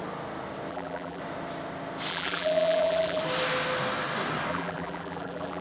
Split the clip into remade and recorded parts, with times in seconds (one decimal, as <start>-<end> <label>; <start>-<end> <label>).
0.0-0.7 recorded; 0.7-1.2 remade; 1.2-2.1 recorded; 2.1-3.2 remade; 3.2-4.5 recorded; 4.5-5.6 remade